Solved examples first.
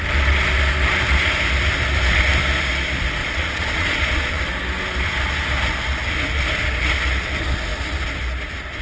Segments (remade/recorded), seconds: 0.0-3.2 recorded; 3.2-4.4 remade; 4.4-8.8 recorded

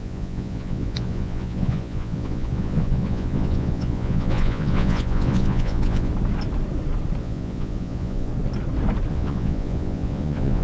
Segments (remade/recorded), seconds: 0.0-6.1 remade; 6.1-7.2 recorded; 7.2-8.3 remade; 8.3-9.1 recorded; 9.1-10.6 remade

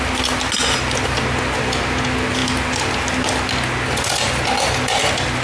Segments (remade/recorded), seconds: 0.0-5.4 recorded